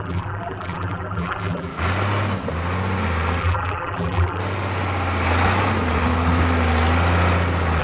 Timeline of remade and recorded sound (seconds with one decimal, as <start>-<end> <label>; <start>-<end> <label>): 0.0-1.7 remade; 1.7-3.4 recorded; 3.4-4.4 remade; 4.4-7.8 recorded